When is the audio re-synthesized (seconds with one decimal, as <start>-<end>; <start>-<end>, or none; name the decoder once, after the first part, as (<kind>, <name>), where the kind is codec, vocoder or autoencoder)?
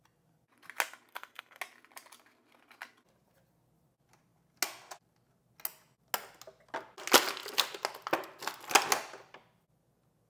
1.1-1.6 (codec, SNAC)